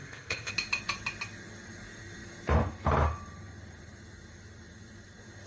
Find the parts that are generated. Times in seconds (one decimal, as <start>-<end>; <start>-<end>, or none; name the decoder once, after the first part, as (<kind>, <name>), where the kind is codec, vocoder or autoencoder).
0.0-0.5 (codec, ZipCodec)